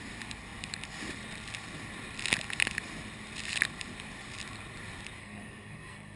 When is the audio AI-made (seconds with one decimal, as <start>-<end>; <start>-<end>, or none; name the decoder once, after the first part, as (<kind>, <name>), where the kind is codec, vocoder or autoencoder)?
5.2-6.2 (codec, SNAC)